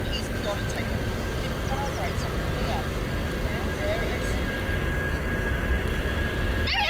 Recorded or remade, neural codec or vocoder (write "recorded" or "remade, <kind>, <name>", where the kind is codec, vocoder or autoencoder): recorded